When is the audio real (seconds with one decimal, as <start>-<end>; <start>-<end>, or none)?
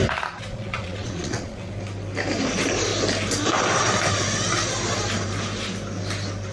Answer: 0.0-0.5; 1.7-6.5